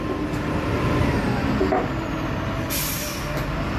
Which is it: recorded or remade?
recorded